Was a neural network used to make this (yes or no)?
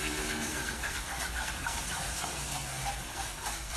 yes